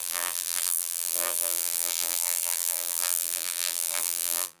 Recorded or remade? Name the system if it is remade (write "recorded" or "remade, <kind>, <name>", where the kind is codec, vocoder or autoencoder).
remade, vocoder, BigVGAN v2